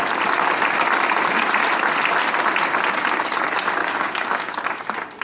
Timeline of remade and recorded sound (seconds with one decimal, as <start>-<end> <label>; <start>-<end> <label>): 0.0-3.8 recorded; 3.8-4.5 remade; 4.5-5.2 recorded